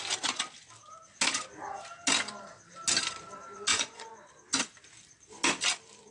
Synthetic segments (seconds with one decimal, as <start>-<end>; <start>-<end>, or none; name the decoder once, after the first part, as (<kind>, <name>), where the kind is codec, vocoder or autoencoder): 3.7-4.3 (vocoder, Vocos)